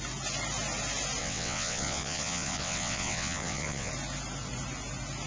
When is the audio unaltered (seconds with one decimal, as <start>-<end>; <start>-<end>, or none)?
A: 0.0-1.2; 3.9-5.3